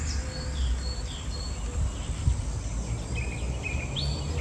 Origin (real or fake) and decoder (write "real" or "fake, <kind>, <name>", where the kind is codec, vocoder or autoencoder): real